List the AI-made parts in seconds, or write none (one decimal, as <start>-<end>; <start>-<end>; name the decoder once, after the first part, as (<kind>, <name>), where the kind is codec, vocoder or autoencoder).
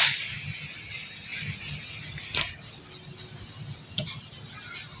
none